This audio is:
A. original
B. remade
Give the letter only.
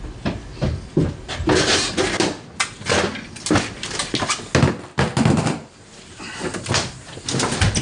A